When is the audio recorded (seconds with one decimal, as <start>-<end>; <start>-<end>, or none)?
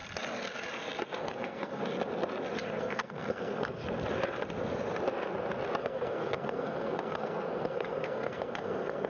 0.0-1.2; 1.8-2.8; 3.8-5.8